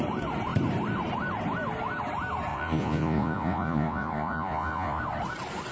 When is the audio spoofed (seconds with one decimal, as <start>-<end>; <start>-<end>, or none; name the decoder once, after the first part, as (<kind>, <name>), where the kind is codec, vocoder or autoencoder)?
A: 2.5-5.0 (vocoder, Vocos)